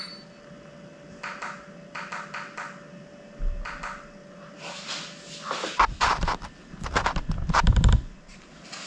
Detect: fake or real real